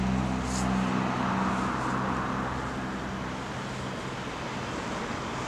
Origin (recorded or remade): recorded